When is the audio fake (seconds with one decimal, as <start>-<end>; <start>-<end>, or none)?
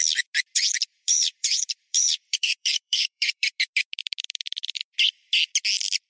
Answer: 0.9-3.6